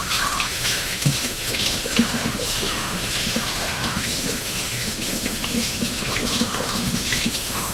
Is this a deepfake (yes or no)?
yes